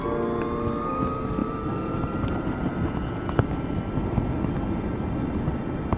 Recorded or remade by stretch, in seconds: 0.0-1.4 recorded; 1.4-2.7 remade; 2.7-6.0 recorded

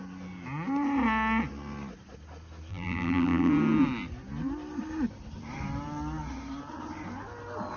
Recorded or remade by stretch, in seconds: 0.0-2.7 recorded; 2.7-3.5 remade; 3.5-7.8 recorded

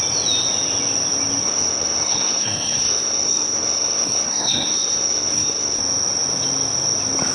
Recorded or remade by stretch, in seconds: 0.0-1.4 recorded; 1.4-5.8 remade; 5.8-7.3 recorded

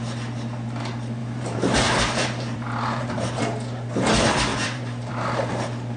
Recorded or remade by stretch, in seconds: 0.0-1.2 recorded; 1.2-3.4 remade; 3.4-4.5 recorded; 4.5-5.1 remade; 5.1-6.0 recorded